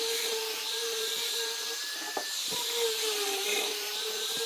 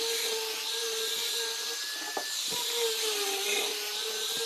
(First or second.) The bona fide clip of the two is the second